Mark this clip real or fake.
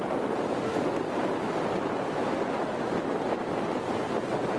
real